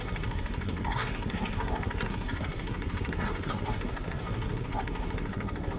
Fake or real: fake